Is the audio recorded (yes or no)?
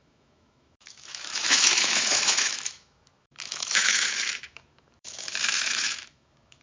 no